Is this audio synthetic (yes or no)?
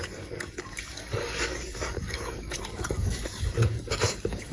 yes